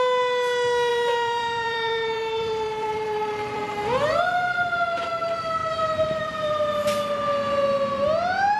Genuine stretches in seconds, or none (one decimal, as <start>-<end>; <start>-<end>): 0.0-0.9; 3.7-5.6; 6.6-8.6